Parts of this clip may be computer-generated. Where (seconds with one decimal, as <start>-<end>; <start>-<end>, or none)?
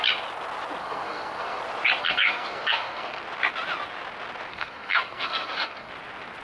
0.8-1.6; 2.0-3.2; 4.5-5.9